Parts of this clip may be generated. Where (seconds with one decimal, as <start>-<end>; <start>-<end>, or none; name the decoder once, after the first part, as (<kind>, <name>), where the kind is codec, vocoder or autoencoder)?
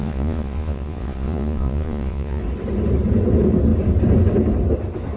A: 0.0-2.4 (vocoder, Vocos)